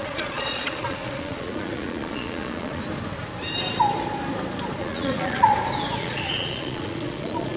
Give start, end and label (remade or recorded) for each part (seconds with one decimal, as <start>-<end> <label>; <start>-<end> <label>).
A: 0.0-2.8 remade; 2.8-4.8 recorded; 4.8-5.5 remade; 5.5-6.0 recorded; 6.0-7.6 remade